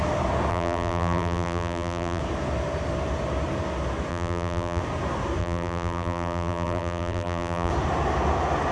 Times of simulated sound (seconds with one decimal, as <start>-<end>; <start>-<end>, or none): 0.5-2.2; 4.1-4.8; 5.4-7.7